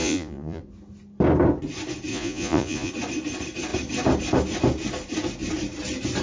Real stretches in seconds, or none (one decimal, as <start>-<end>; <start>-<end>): 0.6-2.1; 2.9-6.2